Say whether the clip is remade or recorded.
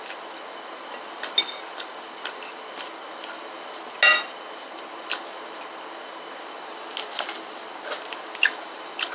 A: recorded